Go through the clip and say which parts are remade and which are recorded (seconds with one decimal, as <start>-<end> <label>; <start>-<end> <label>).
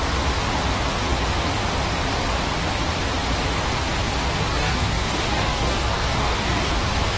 0.0-4.5 recorded; 4.5-6.7 remade; 6.7-7.2 recorded